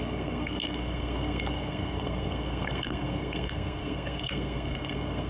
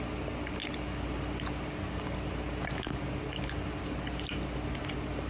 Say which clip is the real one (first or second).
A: second